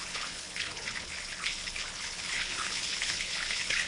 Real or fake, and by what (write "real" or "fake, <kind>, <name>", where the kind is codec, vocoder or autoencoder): fake, codec, HILCodec